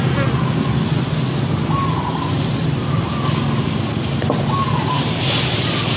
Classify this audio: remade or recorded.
recorded